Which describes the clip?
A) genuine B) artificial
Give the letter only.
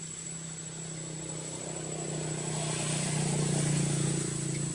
A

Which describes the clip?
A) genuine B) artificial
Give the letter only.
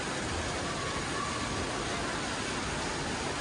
A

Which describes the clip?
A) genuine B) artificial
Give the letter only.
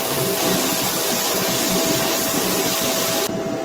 A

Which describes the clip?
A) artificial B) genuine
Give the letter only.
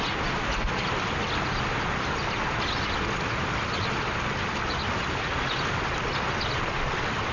B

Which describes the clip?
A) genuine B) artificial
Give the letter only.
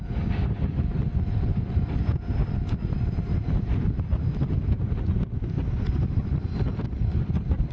A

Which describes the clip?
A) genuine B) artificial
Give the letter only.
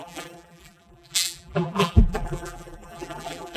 B